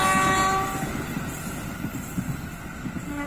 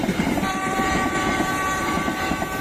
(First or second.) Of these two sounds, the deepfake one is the second